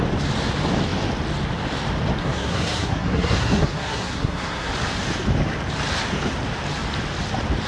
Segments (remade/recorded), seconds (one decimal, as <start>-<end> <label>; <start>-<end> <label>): 0.0-2.2 recorded; 2.2-4.7 remade; 4.7-7.7 recorded